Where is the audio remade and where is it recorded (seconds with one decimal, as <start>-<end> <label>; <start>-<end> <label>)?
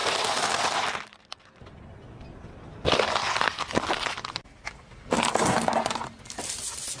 0.0-7.0 recorded